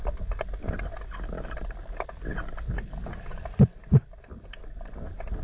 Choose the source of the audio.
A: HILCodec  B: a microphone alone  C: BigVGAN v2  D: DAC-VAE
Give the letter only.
B